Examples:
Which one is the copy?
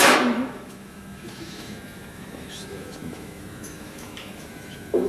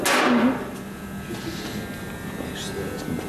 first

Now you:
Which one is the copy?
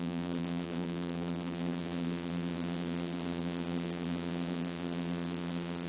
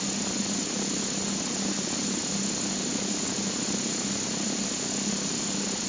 first